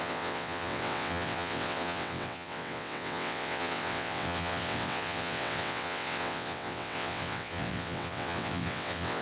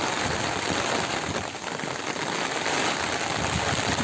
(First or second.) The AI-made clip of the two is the first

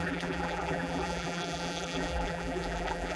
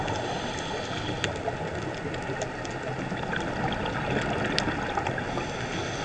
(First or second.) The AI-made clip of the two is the first